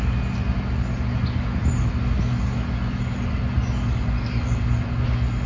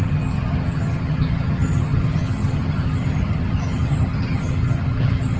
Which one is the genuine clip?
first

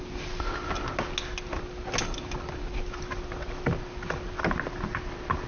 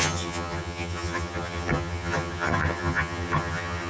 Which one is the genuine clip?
first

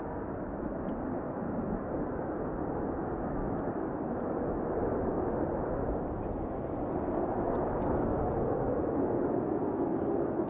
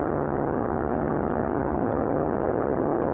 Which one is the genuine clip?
first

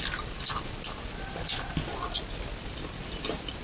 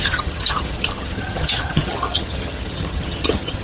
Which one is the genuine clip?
first